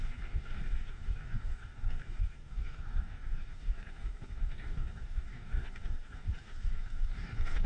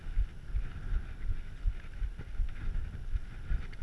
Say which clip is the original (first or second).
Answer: second